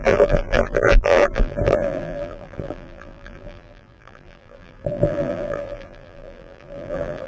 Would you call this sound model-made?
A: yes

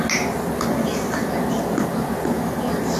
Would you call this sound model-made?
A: no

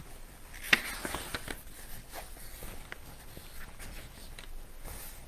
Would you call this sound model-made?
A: no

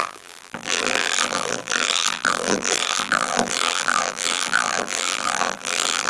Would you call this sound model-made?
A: yes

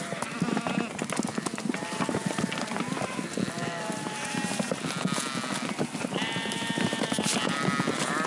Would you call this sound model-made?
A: no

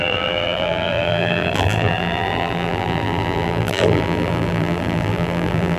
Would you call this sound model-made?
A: yes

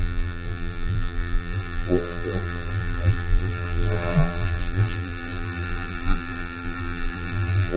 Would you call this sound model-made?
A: yes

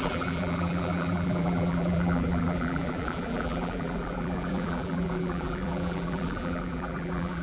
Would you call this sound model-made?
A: yes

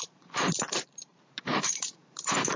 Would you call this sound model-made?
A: yes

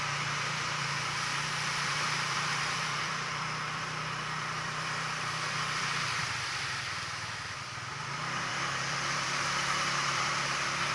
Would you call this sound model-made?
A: yes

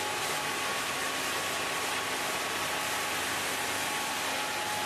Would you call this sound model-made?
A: no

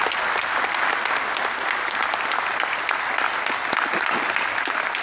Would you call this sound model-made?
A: no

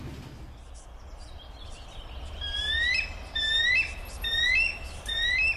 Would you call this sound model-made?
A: no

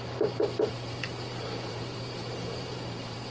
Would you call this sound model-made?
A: yes